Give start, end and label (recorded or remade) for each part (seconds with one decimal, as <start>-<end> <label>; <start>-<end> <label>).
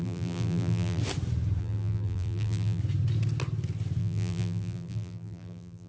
0.0-1.0 remade; 1.0-1.6 recorded; 1.6-2.8 remade; 2.8-4.0 recorded; 4.0-5.9 remade